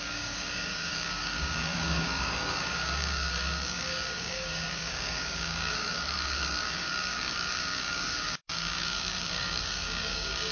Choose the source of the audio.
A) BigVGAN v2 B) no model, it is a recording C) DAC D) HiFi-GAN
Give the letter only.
C